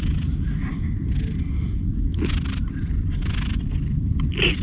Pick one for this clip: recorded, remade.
recorded